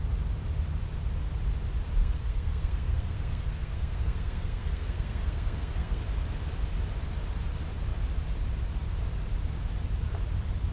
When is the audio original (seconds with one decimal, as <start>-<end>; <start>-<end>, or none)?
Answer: 0.0-2.0; 6.0-10.7